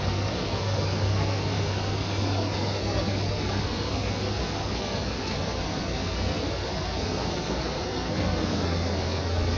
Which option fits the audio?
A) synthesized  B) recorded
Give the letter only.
A